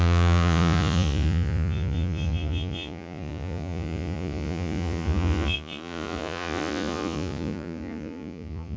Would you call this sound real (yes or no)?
no